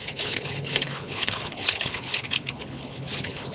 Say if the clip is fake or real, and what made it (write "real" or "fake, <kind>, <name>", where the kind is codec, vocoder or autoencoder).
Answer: fake, codec, HILCodec